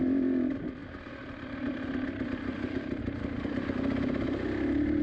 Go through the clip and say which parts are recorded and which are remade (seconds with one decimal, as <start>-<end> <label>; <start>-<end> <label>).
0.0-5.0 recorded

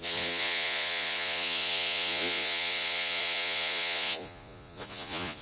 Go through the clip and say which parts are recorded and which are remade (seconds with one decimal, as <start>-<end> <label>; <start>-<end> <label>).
0.0-5.4 remade

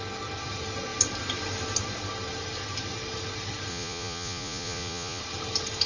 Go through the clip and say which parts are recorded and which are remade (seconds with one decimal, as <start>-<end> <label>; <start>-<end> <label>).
0.0-3.7 recorded; 3.7-5.2 remade; 5.2-5.9 recorded

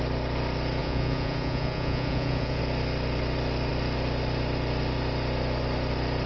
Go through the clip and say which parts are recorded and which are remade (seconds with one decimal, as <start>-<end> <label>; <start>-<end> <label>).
0.0-0.8 recorded; 0.8-2.6 remade; 2.6-6.3 recorded

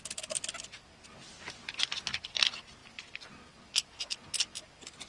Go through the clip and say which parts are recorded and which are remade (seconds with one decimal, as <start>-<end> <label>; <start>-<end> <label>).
0.0-5.1 recorded

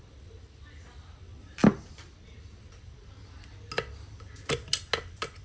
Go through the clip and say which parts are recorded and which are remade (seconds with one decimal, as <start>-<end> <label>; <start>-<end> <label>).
0.0-5.4 recorded